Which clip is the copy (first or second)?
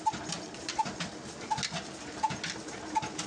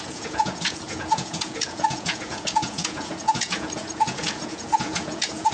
second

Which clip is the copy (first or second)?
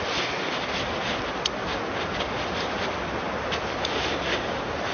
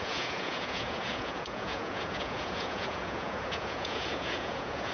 second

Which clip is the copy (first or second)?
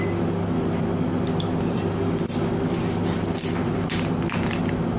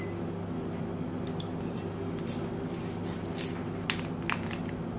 first